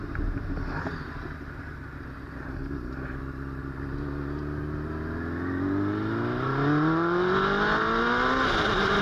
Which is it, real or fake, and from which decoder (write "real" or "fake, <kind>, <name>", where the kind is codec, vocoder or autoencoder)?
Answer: real